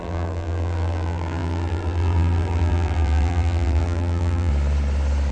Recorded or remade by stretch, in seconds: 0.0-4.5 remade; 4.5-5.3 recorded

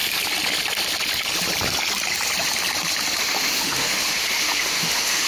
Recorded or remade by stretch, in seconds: 0.0-3.2 recorded; 3.2-5.3 remade

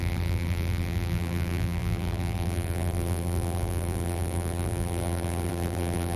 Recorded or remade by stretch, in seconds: 0.0-6.2 remade

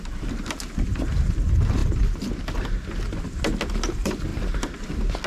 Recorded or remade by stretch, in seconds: 0.0-5.3 recorded

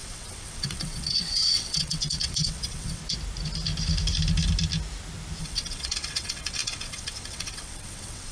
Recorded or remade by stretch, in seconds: 0.0-3.0 remade; 3.0-5.4 recorded; 5.4-8.3 remade

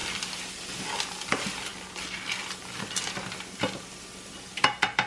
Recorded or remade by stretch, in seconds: 0.0-5.1 recorded